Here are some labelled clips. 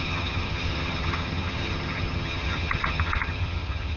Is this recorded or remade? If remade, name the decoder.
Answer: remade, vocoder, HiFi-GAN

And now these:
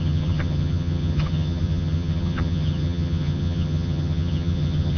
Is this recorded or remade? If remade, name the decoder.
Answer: remade, vocoder, HiFi-GAN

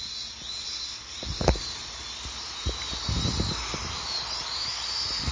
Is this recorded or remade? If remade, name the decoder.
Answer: recorded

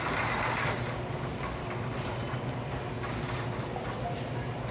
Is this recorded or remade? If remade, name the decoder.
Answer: recorded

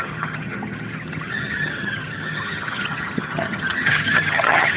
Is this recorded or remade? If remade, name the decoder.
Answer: remade, vocoder, HiFi-GAN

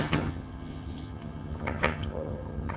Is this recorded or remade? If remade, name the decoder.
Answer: remade, vocoder, HiFi-GAN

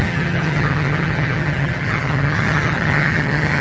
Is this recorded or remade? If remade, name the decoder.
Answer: remade, vocoder, HiFi-GAN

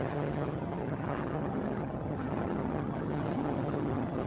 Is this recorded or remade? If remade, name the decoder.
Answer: remade, vocoder, HiFi-GAN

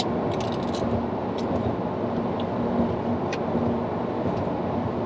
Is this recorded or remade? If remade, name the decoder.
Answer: recorded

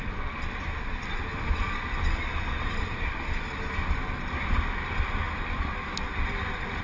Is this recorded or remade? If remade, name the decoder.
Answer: recorded